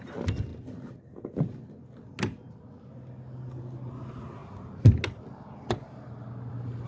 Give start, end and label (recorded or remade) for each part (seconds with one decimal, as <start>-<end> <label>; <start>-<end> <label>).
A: 0.0-6.9 recorded